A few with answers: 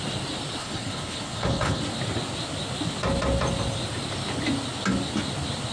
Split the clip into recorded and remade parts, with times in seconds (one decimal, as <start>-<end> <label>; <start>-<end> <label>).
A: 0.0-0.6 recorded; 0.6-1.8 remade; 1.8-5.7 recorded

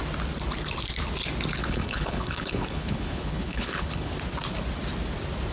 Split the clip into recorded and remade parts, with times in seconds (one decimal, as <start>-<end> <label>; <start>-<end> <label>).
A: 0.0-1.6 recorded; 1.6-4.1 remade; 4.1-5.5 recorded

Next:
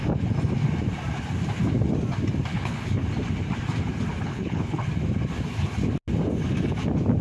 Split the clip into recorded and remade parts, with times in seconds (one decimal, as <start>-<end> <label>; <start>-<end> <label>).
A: 0.0-2.5 recorded; 2.5-3.0 remade; 3.0-4.2 recorded; 4.2-4.9 remade; 4.9-7.2 recorded

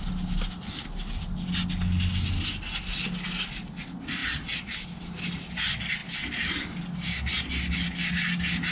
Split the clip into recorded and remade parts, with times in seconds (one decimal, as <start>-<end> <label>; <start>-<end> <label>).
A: 0.0-8.7 recorded

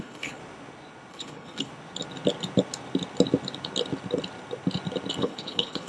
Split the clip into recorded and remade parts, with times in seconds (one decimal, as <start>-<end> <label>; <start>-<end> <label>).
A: 0.0-0.4 remade; 0.4-1.1 recorded; 1.1-1.7 remade; 1.7-5.2 recorded; 5.2-5.9 remade

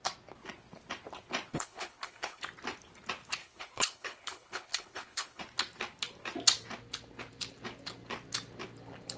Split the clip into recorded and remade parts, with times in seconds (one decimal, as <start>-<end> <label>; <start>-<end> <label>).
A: 0.0-1.5 recorded; 1.5-2.4 remade; 2.4-3.4 recorded; 3.4-5.4 remade; 5.4-9.2 recorded

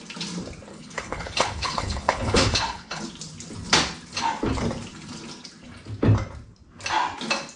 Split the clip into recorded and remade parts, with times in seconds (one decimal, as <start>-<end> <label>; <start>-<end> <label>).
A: 0.0-0.7 recorded; 0.7-3.0 remade; 3.0-7.6 recorded

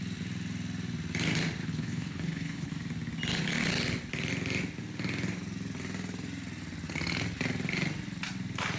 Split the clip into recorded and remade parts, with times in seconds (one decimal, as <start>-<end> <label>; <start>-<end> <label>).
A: 0.0-1.6 recorded; 1.6-2.7 remade; 2.7-8.8 recorded